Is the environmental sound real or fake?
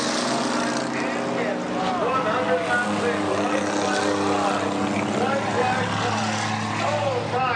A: real